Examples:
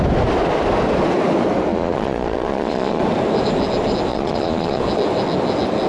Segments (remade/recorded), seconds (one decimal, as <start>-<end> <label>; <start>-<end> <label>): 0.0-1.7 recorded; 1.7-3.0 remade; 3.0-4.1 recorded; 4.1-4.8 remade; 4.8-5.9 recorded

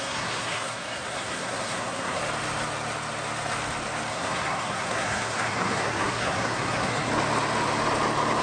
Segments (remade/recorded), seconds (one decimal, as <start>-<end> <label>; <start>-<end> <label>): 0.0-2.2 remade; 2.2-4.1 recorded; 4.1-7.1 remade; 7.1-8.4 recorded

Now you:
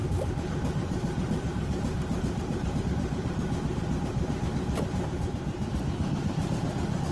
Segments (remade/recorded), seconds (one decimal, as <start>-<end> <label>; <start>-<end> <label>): 0.0-7.1 remade

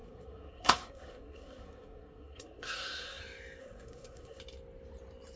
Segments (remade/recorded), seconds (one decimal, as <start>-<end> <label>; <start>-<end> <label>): 0.0-3.2 remade; 3.2-3.6 recorded; 3.6-4.4 remade; 4.4-5.4 recorded

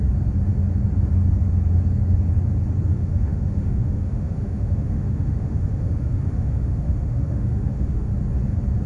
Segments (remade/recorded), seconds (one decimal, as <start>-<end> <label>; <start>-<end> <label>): 0.0-2.9 recorded; 2.9-8.1 remade; 8.1-8.9 recorded

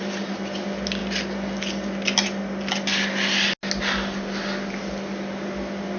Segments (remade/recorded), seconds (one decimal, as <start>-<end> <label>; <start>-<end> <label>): 0.0-6.0 recorded

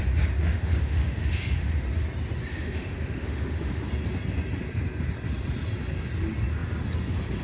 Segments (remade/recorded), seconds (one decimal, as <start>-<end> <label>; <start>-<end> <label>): 0.0-0.4 recorded; 0.4-1.7 remade; 1.7-2.5 recorded; 2.5-3.8 remade; 3.8-7.4 recorded